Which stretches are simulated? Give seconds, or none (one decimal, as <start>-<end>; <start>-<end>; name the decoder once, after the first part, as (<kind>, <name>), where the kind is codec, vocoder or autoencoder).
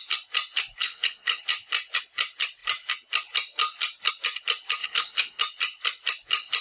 0.8-1.4 (codec, HILCodec); 4.8-5.4